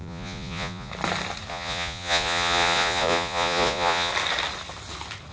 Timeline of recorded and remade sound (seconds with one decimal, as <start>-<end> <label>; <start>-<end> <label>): 0.0-0.9 remade; 0.9-1.5 recorded; 1.5-4.1 remade; 4.1-5.3 recorded